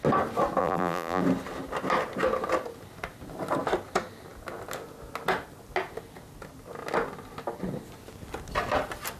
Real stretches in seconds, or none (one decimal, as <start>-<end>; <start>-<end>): 0.0-0.6; 1.2-9.2